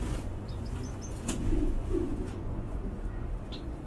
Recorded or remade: remade